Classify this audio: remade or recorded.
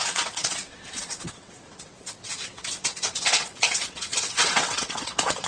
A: remade